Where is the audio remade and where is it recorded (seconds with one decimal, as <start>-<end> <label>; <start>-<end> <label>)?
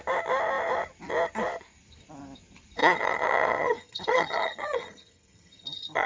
0.0-2.8 recorded; 2.8-6.1 remade